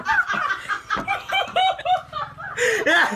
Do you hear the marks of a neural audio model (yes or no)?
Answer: no